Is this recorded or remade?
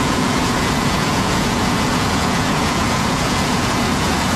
remade